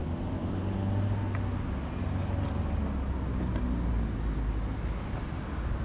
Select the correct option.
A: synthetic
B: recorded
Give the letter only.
B